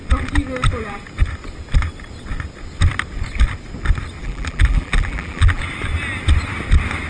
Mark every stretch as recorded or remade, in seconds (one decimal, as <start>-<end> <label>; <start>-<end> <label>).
0.0-4.2 recorded; 4.2-5.6 remade; 5.6-7.1 recorded